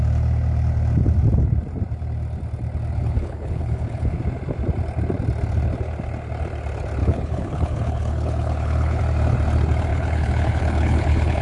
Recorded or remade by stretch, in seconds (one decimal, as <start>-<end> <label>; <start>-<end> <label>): 0.0-3.0 recorded; 3.0-4.2 remade; 4.2-7.0 recorded; 7.0-9.0 remade; 9.0-9.9 recorded; 9.9-11.4 remade